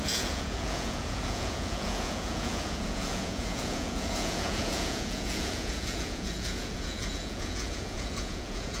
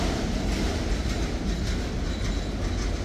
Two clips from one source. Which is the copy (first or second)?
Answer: first